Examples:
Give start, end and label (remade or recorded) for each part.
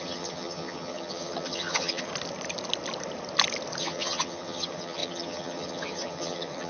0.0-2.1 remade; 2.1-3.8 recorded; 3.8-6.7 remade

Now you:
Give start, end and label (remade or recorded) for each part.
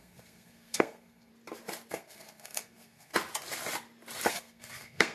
0.0-1.3 remade; 1.3-1.9 recorded; 1.9-3.1 remade; 3.1-4.3 recorded; 4.3-5.1 remade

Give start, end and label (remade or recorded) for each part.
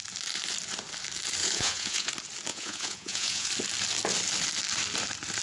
0.0-1.4 recorded; 1.4-2.1 remade; 2.1-2.5 recorded; 2.5-3.5 remade; 3.5-5.4 recorded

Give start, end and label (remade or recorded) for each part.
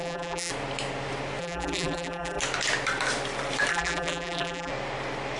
0.0-0.5 remade; 0.5-1.4 recorded; 1.4-2.4 remade; 2.4-3.7 recorded; 3.7-4.7 remade; 4.7-5.4 recorded